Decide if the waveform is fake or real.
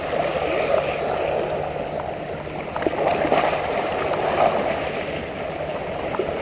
real